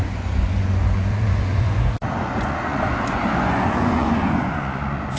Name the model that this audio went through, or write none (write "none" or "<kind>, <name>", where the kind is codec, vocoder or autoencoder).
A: vocoder, Vocos